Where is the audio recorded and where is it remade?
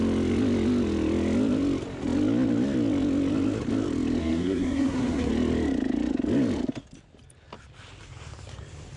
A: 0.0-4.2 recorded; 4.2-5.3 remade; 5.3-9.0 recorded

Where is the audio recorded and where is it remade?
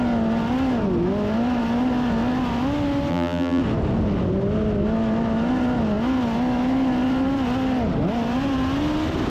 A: 0.0-3.1 recorded; 3.1-3.6 remade; 3.6-9.3 recorded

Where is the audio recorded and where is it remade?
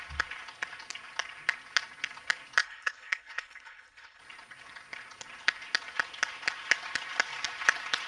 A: 0.0-2.6 recorded; 2.6-4.2 remade; 4.2-8.1 recorded